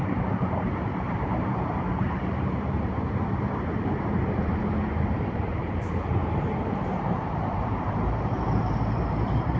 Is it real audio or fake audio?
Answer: fake